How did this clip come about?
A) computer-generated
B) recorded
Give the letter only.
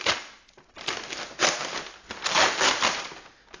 B